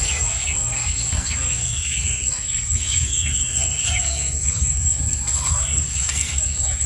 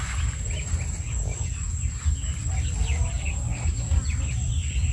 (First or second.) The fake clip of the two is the first